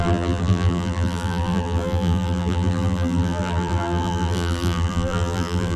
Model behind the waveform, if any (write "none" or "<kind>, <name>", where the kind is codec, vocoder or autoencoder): vocoder, BigVGAN v2